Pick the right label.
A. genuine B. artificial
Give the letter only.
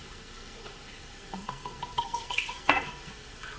B